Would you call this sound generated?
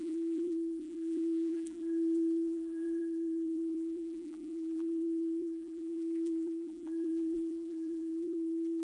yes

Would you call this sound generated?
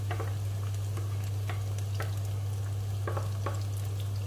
no